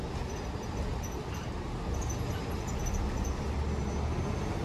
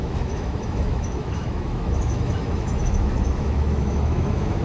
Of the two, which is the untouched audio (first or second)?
first